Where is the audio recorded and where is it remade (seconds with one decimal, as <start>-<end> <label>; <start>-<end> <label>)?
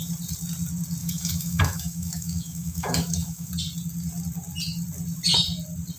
0.0-1.0 recorded; 1.0-3.5 remade; 3.5-6.0 recorded